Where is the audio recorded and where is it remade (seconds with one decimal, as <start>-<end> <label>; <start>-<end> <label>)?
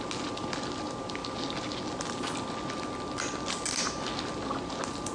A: 0.0-5.1 recorded